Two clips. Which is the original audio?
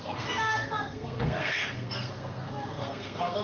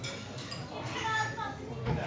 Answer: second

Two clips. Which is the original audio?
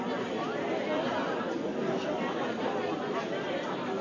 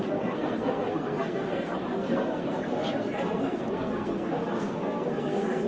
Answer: first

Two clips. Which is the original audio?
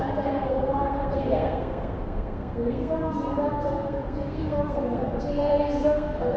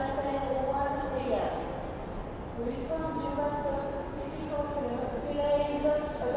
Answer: second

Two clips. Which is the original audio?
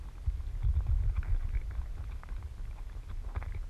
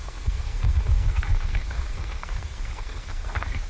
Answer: first